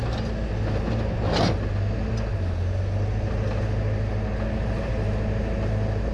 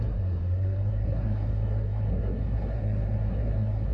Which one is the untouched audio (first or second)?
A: first